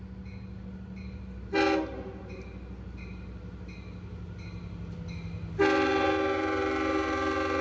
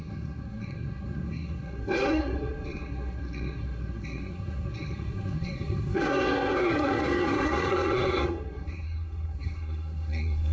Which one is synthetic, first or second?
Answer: second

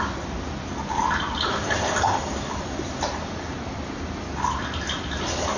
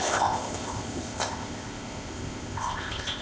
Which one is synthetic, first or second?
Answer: second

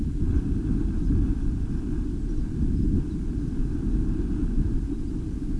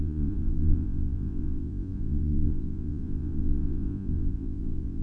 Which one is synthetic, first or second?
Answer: second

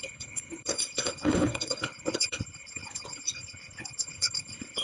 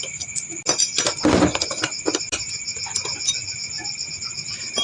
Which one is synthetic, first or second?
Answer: first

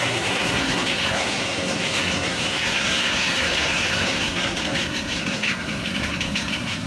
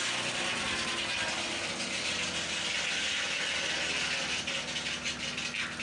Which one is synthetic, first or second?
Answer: first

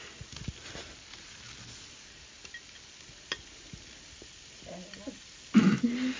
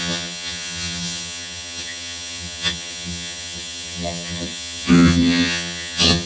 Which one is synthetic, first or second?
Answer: second